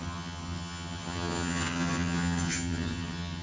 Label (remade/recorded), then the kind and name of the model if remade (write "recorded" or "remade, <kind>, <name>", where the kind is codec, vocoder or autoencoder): remade, vocoder, HiFi-GAN